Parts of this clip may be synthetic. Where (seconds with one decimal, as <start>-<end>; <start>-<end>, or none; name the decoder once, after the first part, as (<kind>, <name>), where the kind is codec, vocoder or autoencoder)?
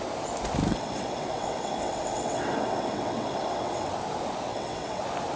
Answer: 0.7-3.9 (vocoder, WaveNeXt); 4.5-5.0